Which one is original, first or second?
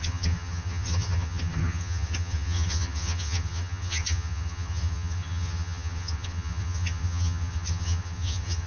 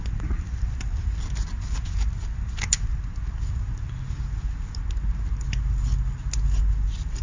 second